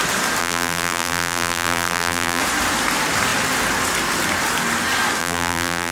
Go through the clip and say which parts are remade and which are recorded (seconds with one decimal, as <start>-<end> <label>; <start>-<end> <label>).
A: 0.0-0.4 recorded; 0.4-2.4 remade; 2.4-5.2 recorded; 5.2-5.9 remade